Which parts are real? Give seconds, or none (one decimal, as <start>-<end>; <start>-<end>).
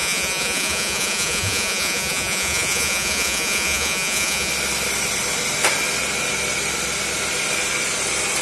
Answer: 4.5-8.4